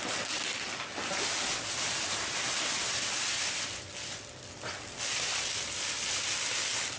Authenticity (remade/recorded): recorded